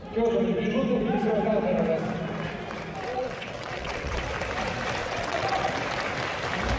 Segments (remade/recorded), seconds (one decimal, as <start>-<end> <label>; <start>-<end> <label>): 0.0-3.1 recorded; 3.1-4.2 remade; 4.2-5.0 recorded; 5.0-5.7 remade; 5.7-6.8 recorded